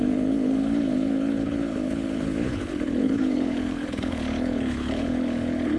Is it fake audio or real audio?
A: fake